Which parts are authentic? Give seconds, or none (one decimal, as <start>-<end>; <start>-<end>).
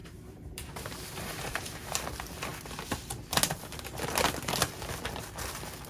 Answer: 2.0-5.9